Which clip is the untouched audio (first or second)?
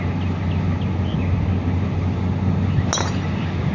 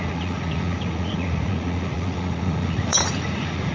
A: first